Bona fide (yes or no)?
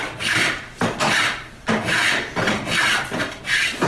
yes